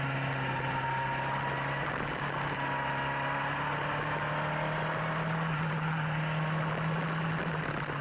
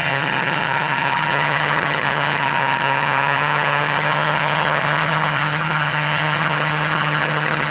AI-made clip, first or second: second